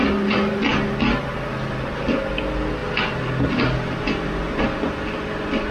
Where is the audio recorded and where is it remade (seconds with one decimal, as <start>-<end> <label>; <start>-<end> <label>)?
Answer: 0.0-5.7 recorded